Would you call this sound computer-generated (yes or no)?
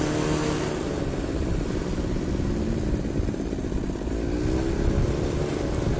no